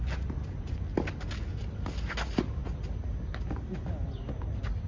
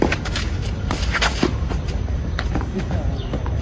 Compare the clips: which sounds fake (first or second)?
second